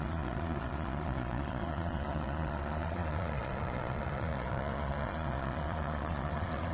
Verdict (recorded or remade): remade